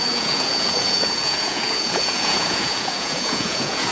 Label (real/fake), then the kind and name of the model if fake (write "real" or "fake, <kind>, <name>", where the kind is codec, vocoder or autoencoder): fake, vocoder, Vocos